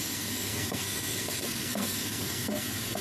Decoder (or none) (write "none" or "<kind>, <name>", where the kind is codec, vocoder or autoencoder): codec, SNAC